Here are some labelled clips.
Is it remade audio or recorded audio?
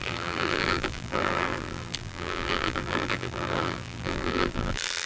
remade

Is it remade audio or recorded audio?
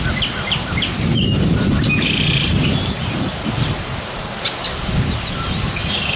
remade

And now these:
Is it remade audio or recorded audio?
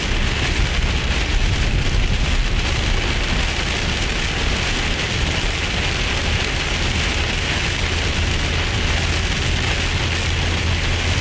recorded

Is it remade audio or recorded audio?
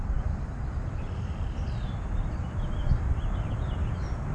remade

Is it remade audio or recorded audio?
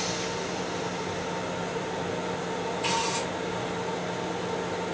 recorded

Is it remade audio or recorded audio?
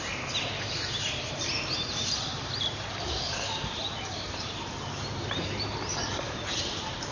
remade